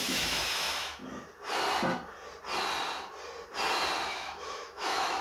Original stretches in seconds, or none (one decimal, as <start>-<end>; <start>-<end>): 1.0-4.1